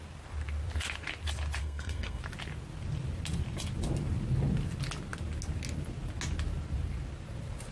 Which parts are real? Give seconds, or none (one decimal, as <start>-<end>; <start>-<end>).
0.0-1.6; 2.2-7.7